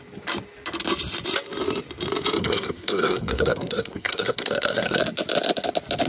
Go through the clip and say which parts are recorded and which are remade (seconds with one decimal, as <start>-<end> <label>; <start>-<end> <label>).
0.0-2.4 recorded; 2.4-5.0 remade; 5.0-6.1 recorded